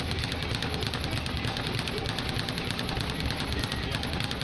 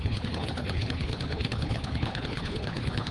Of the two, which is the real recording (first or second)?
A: first